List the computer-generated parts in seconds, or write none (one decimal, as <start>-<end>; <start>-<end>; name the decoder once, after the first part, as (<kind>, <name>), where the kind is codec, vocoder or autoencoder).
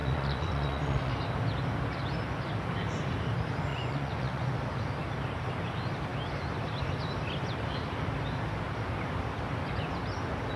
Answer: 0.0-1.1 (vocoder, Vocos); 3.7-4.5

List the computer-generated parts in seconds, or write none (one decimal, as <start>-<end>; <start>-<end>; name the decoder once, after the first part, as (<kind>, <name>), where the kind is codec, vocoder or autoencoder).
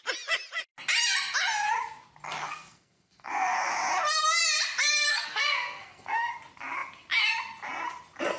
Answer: 2.4-3.7 (codec, SNAC); 5.1-6.3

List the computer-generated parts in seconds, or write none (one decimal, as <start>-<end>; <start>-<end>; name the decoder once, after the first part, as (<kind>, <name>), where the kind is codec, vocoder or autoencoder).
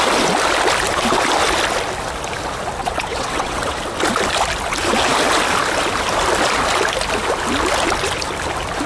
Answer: 2.8-3.8 (vocoder, WaveNeXt)